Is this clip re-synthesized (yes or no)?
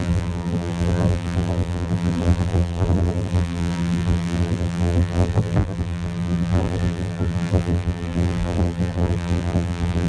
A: yes